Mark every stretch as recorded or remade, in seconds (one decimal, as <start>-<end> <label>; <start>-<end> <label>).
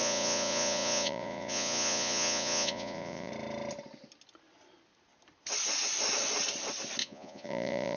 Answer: 0.0-3.3 remade; 3.3-7.0 recorded; 7.0-8.0 remade